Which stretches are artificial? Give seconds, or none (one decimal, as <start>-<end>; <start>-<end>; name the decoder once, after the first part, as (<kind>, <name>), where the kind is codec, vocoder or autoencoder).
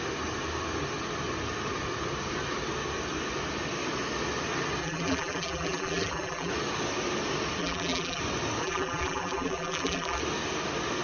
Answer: 4.8-6.5 (vocoder, BigVGAN v2); 7.6-8.2; 8.6-10.2